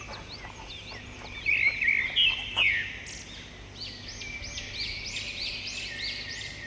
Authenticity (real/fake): real